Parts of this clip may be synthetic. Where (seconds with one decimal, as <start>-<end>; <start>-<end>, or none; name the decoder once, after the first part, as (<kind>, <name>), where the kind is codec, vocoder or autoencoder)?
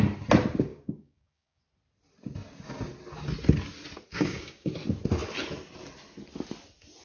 0.7-1.6 (codec, DAC); 4.1-4.7